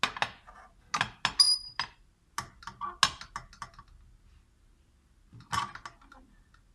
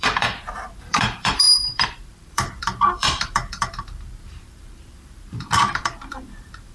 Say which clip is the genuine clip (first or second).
first